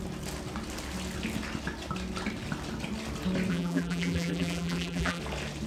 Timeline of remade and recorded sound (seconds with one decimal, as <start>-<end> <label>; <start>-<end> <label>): 0.0-3.5 recorded; 3.5-5.2 remade; 5.2-5.7 recorded